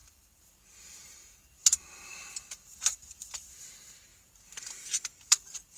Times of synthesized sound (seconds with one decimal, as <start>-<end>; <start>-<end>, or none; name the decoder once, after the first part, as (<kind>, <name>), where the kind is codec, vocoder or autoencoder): 0.0-4.1 (vocoder, BigVGAN v2); 5.3-5.8